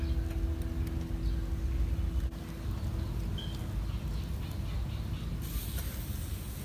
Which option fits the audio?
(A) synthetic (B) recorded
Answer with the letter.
B